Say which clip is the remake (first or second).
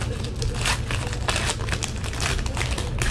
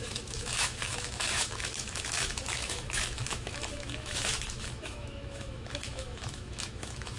second